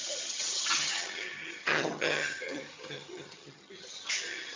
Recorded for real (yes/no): no